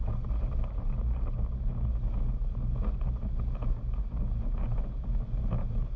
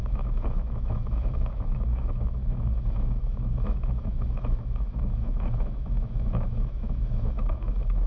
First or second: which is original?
first